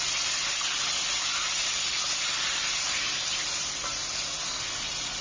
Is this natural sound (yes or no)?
yes